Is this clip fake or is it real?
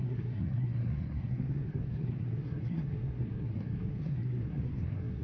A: fake